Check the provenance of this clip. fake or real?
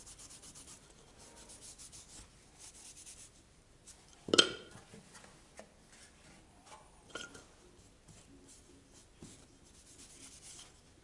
real